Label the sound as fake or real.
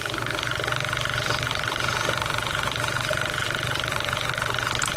real